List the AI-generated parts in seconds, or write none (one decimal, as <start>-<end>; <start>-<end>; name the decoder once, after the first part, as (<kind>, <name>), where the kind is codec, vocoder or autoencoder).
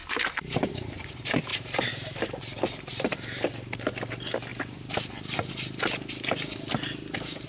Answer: 1.5-2.4 (vocoder, BigVGAN v2); 2.9-3.7; 4.5-5.5